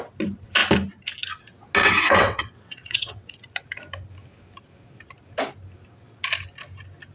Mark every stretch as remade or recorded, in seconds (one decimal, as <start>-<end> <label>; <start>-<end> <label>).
0.0-1.8 recorded; 1.8-3.3 remade; 3.3-7.1 recorded